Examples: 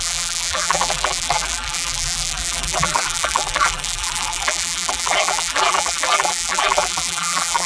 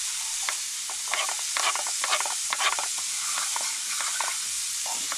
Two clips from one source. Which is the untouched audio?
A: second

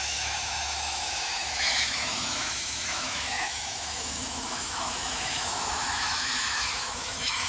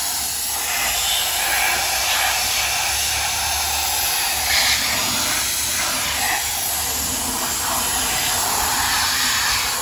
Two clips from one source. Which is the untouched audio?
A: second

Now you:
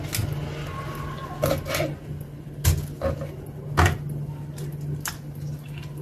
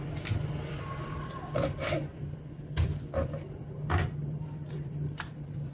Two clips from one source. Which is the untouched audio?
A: first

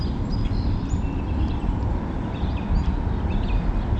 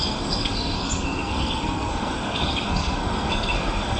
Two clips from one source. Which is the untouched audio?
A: first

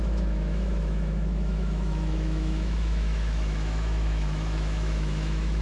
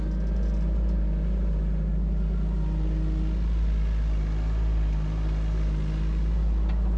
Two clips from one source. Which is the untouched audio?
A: second